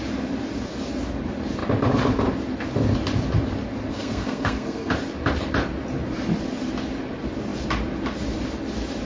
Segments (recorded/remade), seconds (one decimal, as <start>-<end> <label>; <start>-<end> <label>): 0.0-3.9 recorded; 3.9-4.9 remade; 4.9-9.1 recorded